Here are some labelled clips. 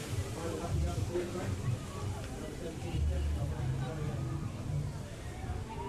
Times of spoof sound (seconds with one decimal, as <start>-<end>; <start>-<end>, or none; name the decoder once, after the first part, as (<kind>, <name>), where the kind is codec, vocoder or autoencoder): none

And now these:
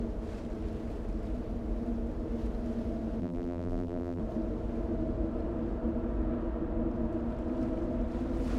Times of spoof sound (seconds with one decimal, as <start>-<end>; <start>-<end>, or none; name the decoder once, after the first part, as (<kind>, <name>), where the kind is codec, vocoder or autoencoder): 3.2-4.2 (vocoder, BigVGAN v2)

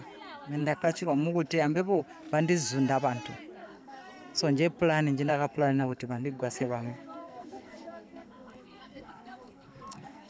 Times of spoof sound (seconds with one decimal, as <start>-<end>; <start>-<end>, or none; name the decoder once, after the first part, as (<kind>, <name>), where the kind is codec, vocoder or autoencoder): 0.6-2.0 (codec, SNAC); 3.6-4.4; 5.3-10.3